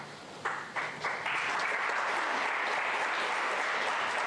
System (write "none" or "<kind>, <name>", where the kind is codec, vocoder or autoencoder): none